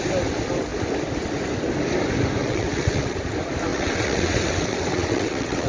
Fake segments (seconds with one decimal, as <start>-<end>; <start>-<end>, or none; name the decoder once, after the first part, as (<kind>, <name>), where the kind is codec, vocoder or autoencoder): 2.4-3.2 (vocoder, WaveNeXt); 3.7-5.7